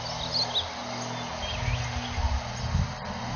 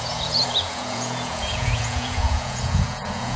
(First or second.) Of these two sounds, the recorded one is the first